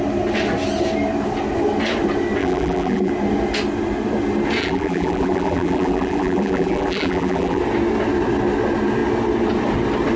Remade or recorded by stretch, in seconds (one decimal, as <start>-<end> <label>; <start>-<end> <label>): 0.0-2.4 recorded; 2.4-3.1 remade; 3.1-4.6 recorded; 4.6-7.6 remade; 7.6-10.2 recorded